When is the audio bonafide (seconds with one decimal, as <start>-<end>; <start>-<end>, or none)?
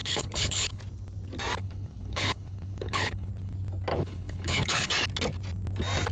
0.8-1.6; 3.3-3.9; 4.9-6.1